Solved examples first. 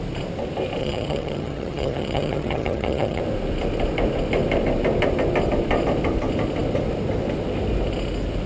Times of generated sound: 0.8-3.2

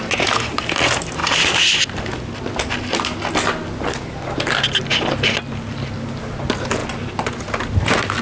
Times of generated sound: none